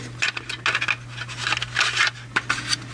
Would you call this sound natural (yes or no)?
yes